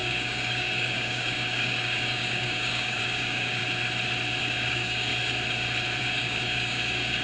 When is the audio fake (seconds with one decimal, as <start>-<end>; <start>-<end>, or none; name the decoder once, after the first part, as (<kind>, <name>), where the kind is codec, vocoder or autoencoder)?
0.0-3.6 (codec, DAC); 4.4-5.1; 6.0-7.2